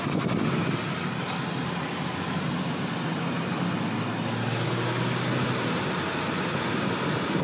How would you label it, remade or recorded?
recorded